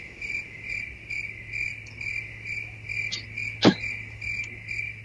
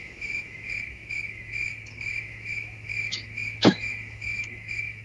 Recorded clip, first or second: first